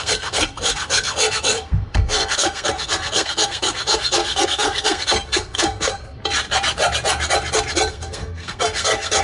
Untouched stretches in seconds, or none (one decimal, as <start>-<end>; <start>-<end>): 6.2-7.9